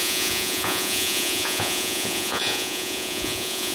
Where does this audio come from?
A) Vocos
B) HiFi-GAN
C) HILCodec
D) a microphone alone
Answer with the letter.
A